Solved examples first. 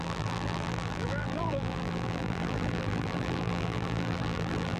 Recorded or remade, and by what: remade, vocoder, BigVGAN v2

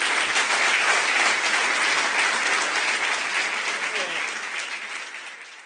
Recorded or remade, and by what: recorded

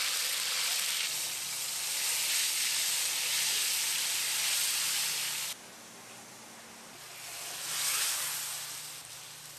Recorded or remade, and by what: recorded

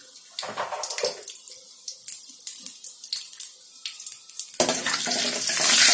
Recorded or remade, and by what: recorded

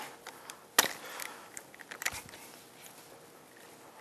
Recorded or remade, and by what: recorded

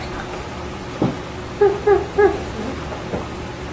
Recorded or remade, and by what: recorded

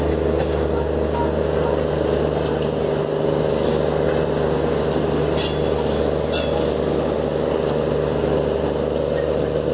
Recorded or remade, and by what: recorded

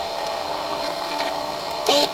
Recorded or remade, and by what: remade, codec, SNAC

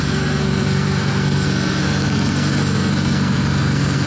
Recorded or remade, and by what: remade, codec, SNAC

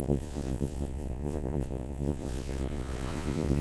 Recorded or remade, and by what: remade, vocoder, Vocos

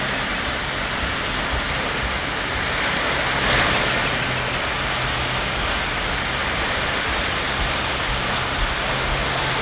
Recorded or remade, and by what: recorded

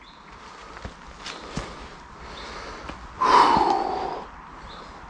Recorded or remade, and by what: recorded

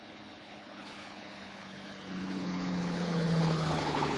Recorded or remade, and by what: remade, codec, HILCodec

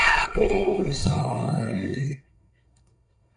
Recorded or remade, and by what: remade, codec, SNAC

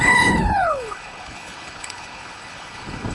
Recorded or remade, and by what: remade, codec, HILCodec